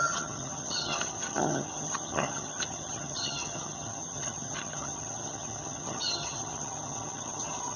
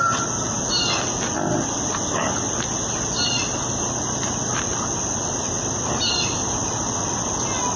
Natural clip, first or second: second